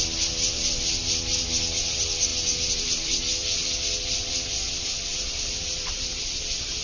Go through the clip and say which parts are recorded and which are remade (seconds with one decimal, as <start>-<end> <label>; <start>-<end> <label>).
0.0-3.6 remade; 3.6-4.3 recorded; 4.3-6.8 remade